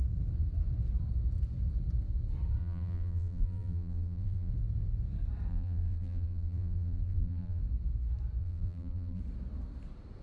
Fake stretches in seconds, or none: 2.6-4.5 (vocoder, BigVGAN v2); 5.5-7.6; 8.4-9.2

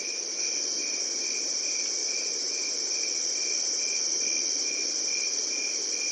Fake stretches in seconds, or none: 2.0-2.7 (vocoder, BigVGAN v2)